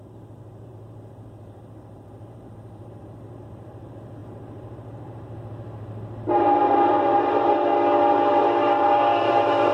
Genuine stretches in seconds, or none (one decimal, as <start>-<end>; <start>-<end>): 7.7-8.3